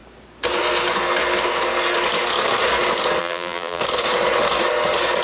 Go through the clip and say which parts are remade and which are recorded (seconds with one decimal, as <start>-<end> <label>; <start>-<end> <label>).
0.0-3.2 recorded; 3.2-3.8 remade; 3.8-5.2 recorded